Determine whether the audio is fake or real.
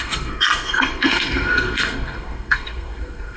fake